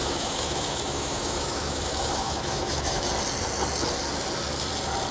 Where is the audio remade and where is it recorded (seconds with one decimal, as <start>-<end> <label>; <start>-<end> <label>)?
0.0-3.1 remade; 3.1-5.1 recorded